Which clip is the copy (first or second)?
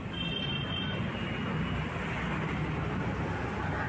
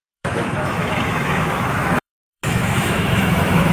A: second